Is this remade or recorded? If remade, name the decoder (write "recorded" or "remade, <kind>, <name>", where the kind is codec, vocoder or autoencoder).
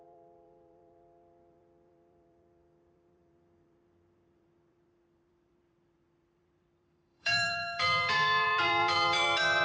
remade, vocoder, BigVGAN v2